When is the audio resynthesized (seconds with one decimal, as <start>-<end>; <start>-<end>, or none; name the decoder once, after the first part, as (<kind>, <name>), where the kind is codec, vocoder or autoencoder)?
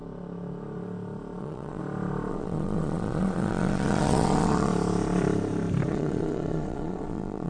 1.4-1.8 (vocoder, WaveNeXt); 2.3-4.7; 5.9-7.5